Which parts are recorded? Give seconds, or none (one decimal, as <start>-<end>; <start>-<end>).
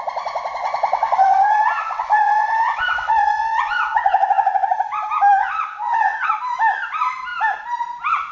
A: 0.0-0.6; 4.7-5.4; 6.3-8.3